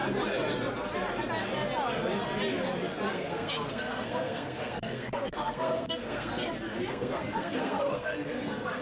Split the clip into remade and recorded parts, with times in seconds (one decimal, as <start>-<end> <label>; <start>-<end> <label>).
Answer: 0.0-3.1 recorded; 3.1-6.3 remade; 6.3-6.9 recorded; 6.9-8.8 remade